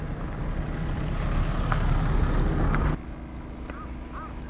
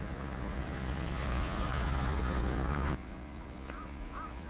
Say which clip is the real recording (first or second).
first